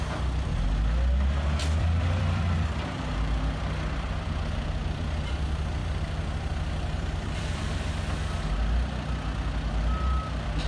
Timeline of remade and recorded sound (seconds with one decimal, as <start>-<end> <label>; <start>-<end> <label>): 0.0-1.6 recorded; 1.6-5.3 remade; 5.3-5.8 recorded; 5.8-7.9 remade; 7.9-10.7 recorded